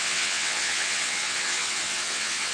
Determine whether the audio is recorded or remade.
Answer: remade